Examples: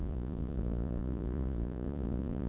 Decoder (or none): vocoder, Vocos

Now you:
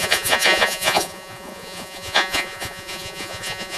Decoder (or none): vocoder, Vocos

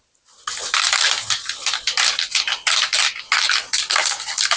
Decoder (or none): none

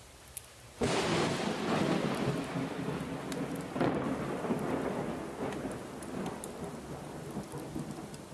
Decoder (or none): none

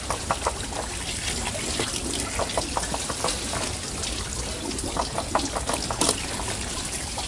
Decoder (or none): none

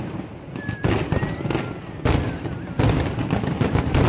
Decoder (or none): none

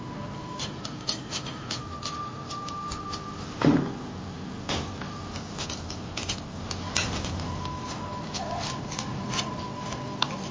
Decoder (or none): none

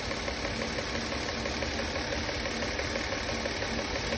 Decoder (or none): none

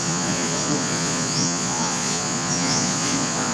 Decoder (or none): vocoder, Vocos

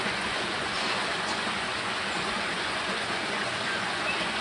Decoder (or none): vocoder, Vocos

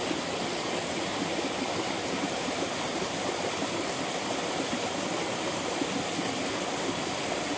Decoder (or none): none